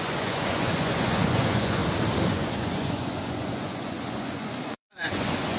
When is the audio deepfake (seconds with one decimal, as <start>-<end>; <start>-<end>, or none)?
0.0-1.8; 2.3-5.6